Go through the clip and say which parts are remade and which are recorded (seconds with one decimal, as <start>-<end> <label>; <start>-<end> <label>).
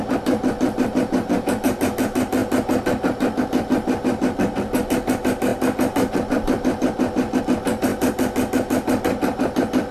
0.0-9.9 recorded